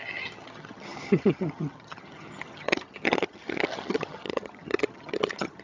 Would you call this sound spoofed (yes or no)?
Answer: yes